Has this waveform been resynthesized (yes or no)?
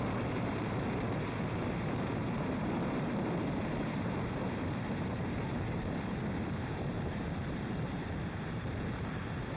yes